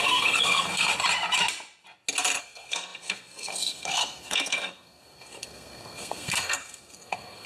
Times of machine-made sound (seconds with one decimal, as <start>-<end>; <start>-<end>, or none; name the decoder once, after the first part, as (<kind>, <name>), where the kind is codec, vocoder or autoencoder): 0.0-0.9 (codec, SNAC); 2.4-7.5